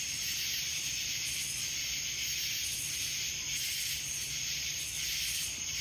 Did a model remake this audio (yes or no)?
no